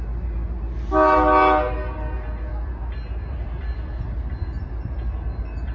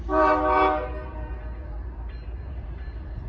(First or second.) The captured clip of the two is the first